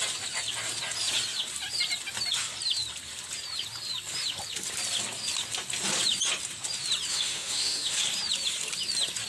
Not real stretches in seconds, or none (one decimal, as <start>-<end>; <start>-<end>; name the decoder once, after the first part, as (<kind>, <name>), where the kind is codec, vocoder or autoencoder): 7.1-8.0 (autoencoder, DAC-VAE)